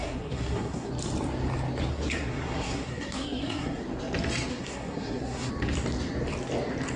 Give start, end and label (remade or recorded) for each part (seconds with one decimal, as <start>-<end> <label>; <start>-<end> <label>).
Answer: 0.0-0.9 remade; 0.9-1.9 recorded; 1.9-3.8 remade; 3.8-4.5 recorded; 4.5-5.5 remade; 5.5-7.0 recorded